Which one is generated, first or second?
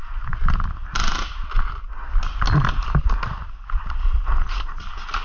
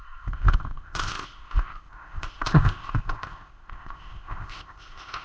second